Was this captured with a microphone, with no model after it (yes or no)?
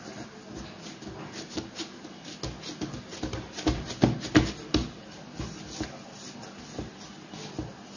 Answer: yes